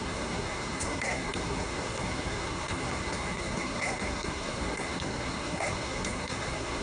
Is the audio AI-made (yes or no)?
yes